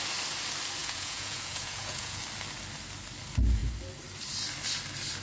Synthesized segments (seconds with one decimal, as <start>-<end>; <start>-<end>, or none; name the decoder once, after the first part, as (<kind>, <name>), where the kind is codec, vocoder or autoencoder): 0.8-2.2 (vocoder, Vocos)